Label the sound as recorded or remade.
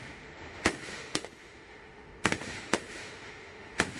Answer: remade